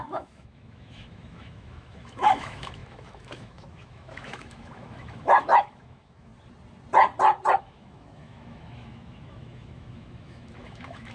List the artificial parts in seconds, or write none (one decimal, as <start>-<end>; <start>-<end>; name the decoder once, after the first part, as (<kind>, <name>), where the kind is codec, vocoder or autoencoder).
0.0-6.3 (autoencoder, DAC-VAE); 7.6-11.1